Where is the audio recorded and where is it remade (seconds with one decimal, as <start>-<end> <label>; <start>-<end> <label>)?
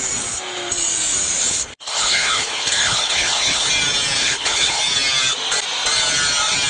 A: 0.0-1.4 recorded; 1.4-3.7 remade; 3.7-4.2 recorded; 4.2-4.8 remade; 4.8-6.7 recorded